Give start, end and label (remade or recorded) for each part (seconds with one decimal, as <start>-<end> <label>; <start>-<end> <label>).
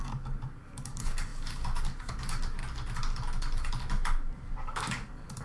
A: 0.0-2.6 remade; 2.6-4.6 recorded; 4.6-5.4 remade